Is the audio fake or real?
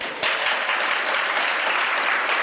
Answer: fake